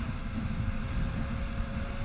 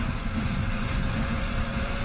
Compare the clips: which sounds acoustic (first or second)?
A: first